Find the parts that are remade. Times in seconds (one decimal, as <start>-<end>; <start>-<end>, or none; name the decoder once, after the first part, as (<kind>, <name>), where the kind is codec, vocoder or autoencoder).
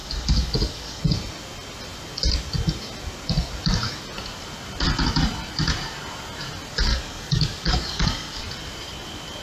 0.0-1.0 (codec, DAC); 6.9-8.4